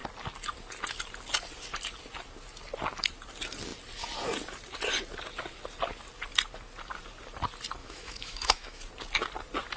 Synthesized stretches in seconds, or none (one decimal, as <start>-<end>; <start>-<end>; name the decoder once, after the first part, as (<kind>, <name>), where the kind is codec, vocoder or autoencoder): 7.8-8.8 (autoencoder, DAC-VAE)